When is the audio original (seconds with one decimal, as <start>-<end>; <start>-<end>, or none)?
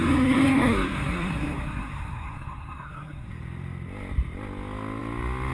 3.3-5.5